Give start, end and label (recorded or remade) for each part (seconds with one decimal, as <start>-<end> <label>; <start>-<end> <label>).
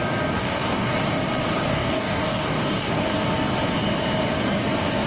0.0-0.4 recorded; 0.4-0.9 remade; 0.9-1.7 recorded; 1.7-2.9 remade; 2.9-5.1 recorded